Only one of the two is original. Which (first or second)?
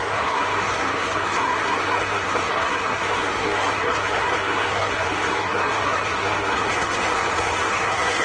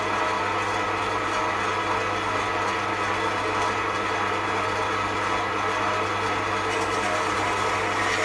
second